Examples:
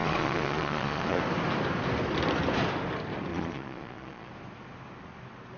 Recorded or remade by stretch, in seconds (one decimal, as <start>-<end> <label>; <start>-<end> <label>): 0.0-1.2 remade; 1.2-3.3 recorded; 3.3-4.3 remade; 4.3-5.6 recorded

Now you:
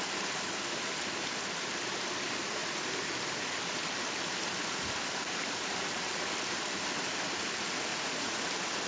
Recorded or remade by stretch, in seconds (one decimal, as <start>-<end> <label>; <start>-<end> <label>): 0.0-7.9 recorded; 7.9-8.4 remade; 8.4-8.9 recorded

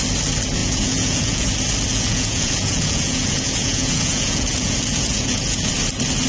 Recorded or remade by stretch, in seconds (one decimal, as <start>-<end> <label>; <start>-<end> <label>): 0.0-0.6 recorded; 0.6-1.5 remade; 1.5-1.9 recorded; 1.9-5.7 remade; 5.7-6.3 recorded

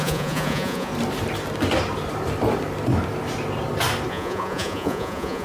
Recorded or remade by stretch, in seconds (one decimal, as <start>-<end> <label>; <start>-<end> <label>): 0.0-0.9 remade; 0.9-4.1 recorded; 4.1-5.4 remade

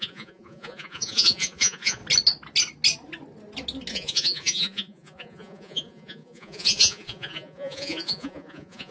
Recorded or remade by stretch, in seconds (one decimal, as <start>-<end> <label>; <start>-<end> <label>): 0.0-2.0 remade; 2.0-3.9 recorded; 3.9-8.9 remade

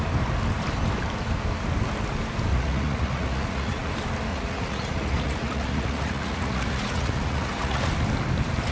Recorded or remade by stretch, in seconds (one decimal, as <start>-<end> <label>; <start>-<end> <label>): 0.0-2.5 recorded; 2.5-3.9 remade; 3.9-4.3 recorded; 4.3-7.8 remade; 7.8-8.7 recorded

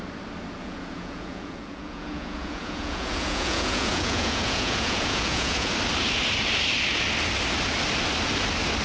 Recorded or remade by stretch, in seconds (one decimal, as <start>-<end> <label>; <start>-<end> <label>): 0.0-0.6 recorded; 0.6-5.7 remade; 5.7-8.8 recorded

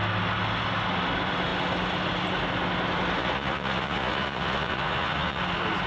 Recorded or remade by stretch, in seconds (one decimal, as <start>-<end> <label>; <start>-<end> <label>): 0.0-3.2 recorded; 3.2-5.4 remade; 5.4-5.9 recorded